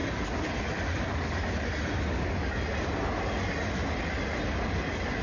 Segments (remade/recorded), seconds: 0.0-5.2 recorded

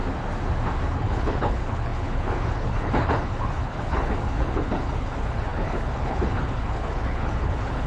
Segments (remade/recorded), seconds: 0.0-0.9 recorded; 0.9-7.9 remade

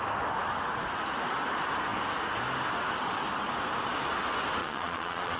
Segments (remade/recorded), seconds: 0.0-4.6 recorded; 4.6-5.4 remade

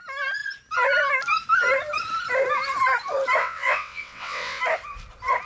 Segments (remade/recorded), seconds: 0.0-3.4 recorded; 3.4-4.6 remade; 4.6-5.5 recorded

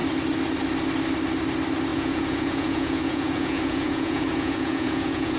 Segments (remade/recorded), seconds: 0.0-1.9 recorded; 1.9-5.4 remade